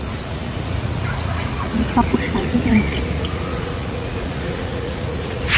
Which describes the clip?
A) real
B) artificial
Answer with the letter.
B